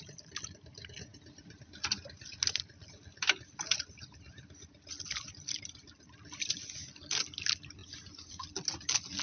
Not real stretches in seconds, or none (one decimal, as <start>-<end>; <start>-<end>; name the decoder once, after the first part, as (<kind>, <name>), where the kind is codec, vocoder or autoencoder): none